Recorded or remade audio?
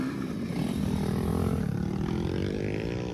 recorded